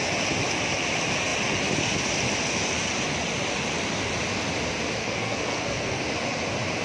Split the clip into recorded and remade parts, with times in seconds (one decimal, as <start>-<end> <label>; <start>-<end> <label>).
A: 0.0-5.0 recorded; 5.0-6.0 remade; 6.0-6.8 recorded